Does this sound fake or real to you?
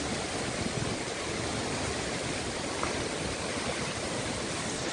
real